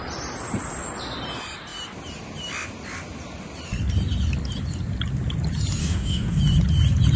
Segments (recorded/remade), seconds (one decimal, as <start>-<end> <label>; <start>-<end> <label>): 0.0-5.8 recorded; 5.8-6.4 remade; 6.4-7.2 recorded